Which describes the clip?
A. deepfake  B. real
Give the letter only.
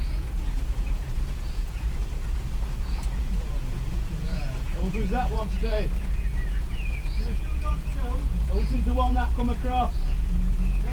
A